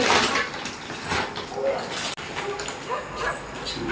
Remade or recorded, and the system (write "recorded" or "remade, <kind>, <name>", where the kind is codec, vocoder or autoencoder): recorded